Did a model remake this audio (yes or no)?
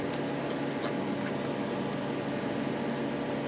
no